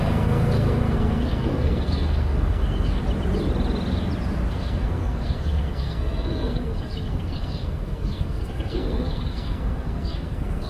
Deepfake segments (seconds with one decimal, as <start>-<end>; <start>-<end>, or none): 0.0-3.0; 4.5-10.7